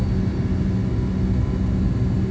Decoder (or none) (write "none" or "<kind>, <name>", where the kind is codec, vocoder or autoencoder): none